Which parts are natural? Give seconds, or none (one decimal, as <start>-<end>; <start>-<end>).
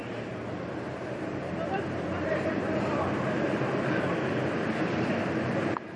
none